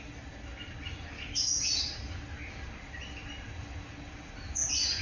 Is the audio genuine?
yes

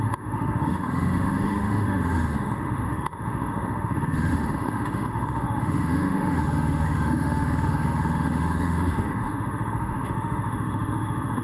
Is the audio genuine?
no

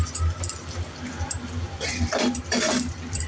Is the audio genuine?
no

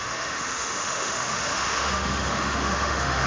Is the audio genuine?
no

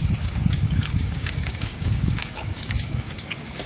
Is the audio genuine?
no